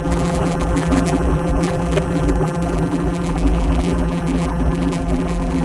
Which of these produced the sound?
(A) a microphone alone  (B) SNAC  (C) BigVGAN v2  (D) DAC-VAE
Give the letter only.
C